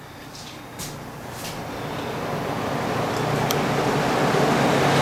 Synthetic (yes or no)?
no